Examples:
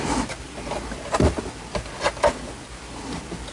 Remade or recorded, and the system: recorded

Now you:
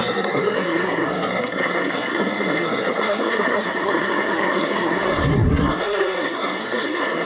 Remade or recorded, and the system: remade, codec, SNAC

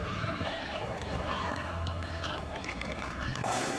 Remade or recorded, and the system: remade, codec, SNAC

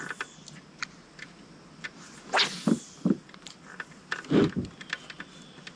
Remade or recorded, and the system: recorded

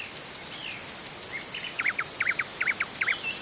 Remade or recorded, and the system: recorded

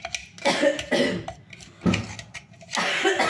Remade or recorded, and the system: recorded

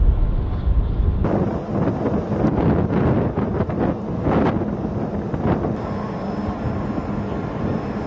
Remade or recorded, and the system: recorded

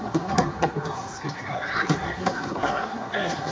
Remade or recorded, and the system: remade, codec, SNAC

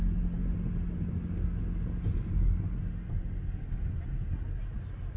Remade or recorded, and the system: recorded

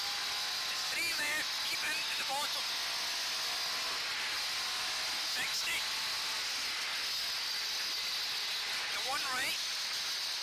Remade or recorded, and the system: recorded